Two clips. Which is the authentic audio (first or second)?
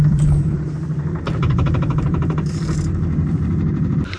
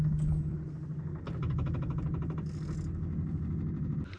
second